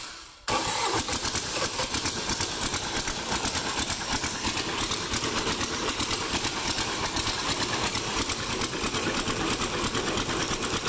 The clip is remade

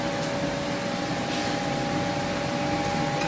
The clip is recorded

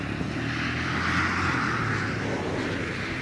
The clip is recorded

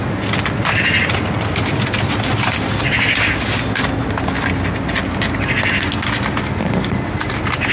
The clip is recorded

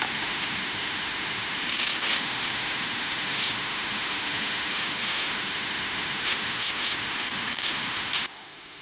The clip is remade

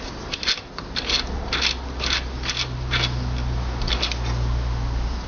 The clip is recorded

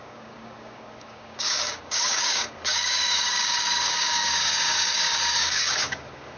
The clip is remade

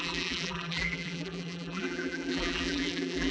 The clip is remade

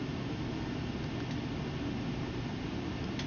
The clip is recorded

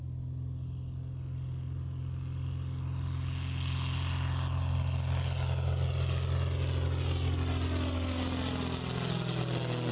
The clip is recorded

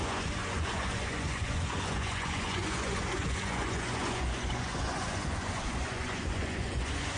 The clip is remade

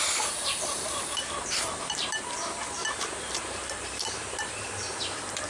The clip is remade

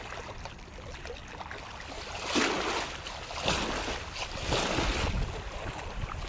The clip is recorded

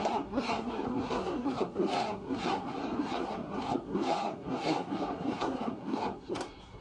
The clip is remade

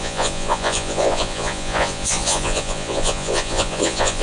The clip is remade